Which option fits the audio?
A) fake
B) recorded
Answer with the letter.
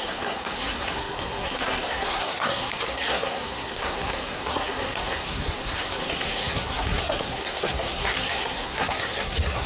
A